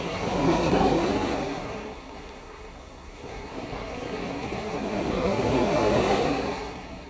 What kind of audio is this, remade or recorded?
remade